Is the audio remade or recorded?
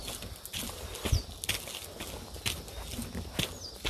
recorded